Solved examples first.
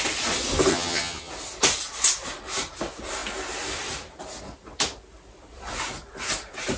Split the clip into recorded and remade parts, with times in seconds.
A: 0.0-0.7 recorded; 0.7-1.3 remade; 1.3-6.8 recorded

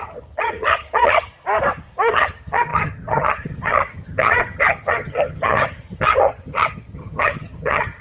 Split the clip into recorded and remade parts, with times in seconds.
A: 0.0-1.3 remade; 1.3-2.1 recorded; 2.1-8.0 remade

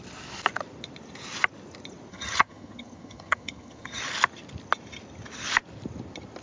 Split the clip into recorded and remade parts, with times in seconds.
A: 0.0-2.1 recorded; 2.1-4.0 remade; 4.0-6.4 recorded

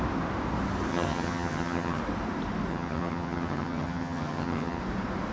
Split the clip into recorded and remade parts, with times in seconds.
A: 0.0-0.9 recorded; 0.9-2.0 remade; 2.0-2.7 recorded; 2.7-4.8 remade; 4.8-5.3 recorded